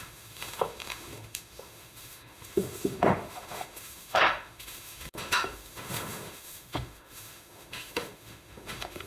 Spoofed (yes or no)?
yes